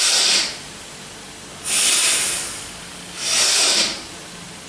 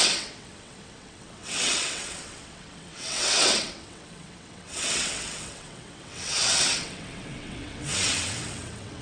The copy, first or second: second